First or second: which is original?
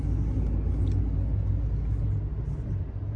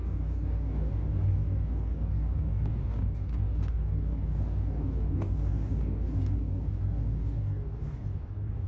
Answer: first